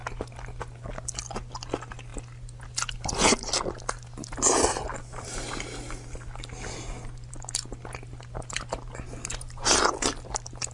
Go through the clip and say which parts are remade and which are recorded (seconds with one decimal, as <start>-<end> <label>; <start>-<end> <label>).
0.0-10.7 recorded